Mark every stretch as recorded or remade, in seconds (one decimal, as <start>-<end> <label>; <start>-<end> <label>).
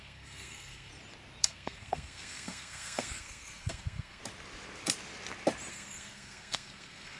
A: 0.0-0.9 remade; 0.9-1.4 recorded; 1.4-4.2 remade; 4.2-5.7 recorded; 5.7-7.2 remade